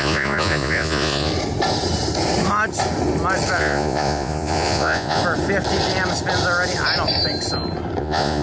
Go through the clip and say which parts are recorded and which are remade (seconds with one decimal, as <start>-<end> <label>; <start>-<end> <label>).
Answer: 0.0-1.3 remade; 1.3-3.6 recorded; 3.6-5.2 remade; 5.2-8.0 recorded; 8.0-8.4 remade